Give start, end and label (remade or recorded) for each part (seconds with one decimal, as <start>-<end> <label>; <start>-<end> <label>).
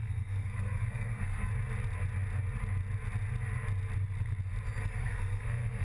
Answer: 0.0-1.5 remade; 1.5-5.0 recorded; 5.0-5.8 remade